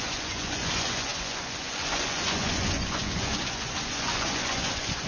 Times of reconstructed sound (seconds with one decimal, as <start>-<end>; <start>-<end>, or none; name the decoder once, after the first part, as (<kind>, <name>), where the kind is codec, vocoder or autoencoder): 0.0-5.1 (vocoder, Vocos)

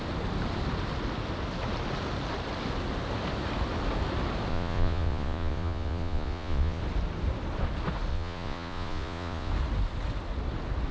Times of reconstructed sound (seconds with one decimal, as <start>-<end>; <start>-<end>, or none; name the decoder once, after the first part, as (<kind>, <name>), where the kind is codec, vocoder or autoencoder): 4.5-6.8 (vocoder, Vocos); 8.1-9.5

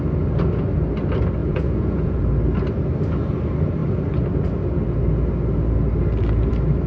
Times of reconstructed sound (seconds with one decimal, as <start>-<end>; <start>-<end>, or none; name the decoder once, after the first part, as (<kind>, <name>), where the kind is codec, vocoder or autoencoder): 1.4-2.2 (vocoder, Vocos)

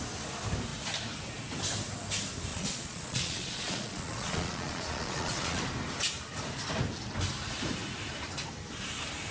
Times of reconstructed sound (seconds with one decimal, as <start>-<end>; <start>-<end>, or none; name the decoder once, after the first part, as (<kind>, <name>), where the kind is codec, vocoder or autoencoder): 2.5-5.6 (vocoder, Vocos)

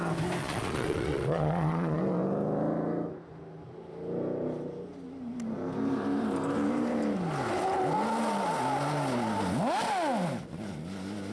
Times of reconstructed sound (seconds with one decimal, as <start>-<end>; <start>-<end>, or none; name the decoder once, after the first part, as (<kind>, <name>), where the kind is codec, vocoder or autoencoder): 0.4-2.0 (vocoder, Vocos)

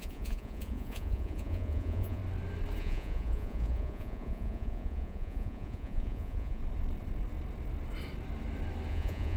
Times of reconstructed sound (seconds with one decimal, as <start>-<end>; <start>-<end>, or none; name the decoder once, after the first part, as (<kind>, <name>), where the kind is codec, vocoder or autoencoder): 0.0-2.2 (vocoder, Vocos); 2.8-6.6; 8.9-9.4

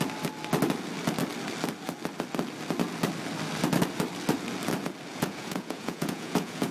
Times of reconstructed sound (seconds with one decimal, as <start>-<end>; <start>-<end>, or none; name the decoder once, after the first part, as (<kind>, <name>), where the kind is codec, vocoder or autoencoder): 5.1-6.7 (vocoder, Vocos)

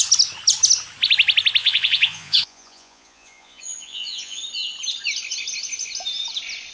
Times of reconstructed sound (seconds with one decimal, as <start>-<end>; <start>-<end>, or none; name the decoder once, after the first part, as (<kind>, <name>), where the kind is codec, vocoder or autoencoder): 1.6-4.4 (vocoder, Vocos)